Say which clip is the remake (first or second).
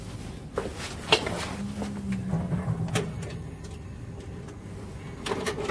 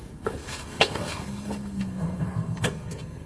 second